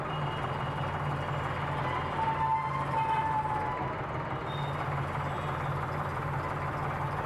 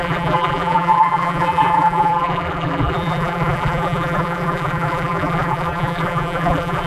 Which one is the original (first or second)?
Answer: first